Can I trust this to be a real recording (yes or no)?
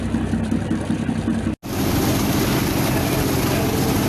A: yes